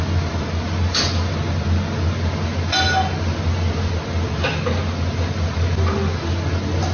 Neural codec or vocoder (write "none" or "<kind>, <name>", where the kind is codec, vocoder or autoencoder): none